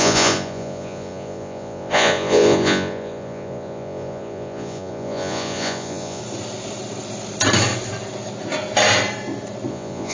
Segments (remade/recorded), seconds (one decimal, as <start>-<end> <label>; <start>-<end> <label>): 0.0-6.2 remade; 6.2-9.7 recorded; 9.7-10.1 remade